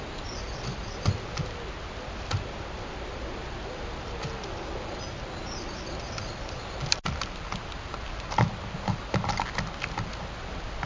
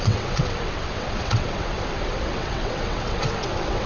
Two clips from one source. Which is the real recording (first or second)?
first